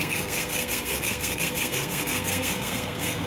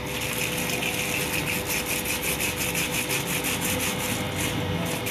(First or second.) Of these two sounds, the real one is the second